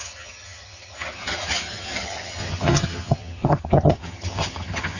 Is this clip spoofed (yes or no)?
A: yes